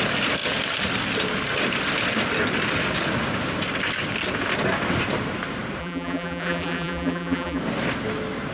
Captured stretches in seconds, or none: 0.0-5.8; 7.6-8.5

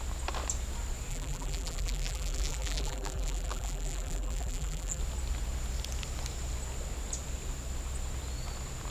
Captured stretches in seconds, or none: 0.0-1.1; 5.0-8.9

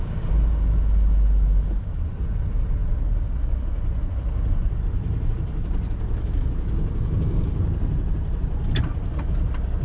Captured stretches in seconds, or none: 0.0-9.8

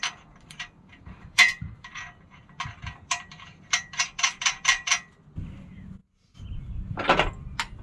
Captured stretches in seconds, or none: 6.0-6.6

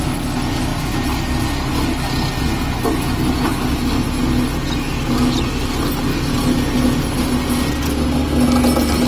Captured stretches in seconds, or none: 0.0-9.1